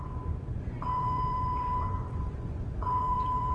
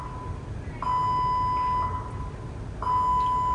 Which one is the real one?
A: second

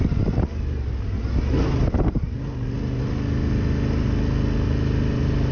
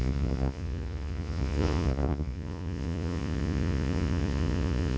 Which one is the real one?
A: first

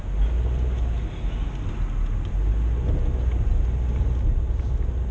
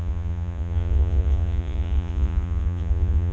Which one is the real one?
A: first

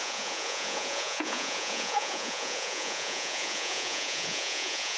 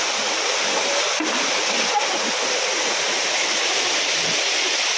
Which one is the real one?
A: second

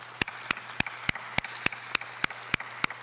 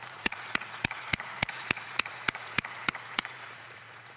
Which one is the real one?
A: first